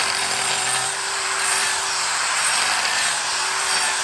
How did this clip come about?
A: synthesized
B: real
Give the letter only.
A